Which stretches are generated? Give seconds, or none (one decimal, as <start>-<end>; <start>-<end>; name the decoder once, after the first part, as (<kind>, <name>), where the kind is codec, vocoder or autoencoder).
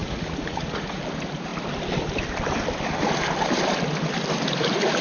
0.0-1.0 (vocoder, Vocos)